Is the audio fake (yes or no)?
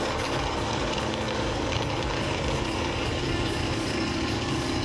yes